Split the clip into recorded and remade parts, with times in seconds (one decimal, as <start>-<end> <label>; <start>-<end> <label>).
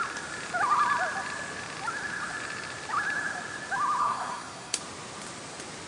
0.0-4.0 recorded; 4.0-4.8 remade; 4.8-5.9 recorded